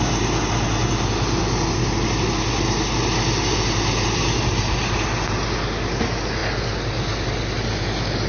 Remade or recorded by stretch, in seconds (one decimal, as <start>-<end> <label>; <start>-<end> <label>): 0.0-8.3 recorded